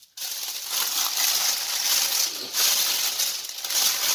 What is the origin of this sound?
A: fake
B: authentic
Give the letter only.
B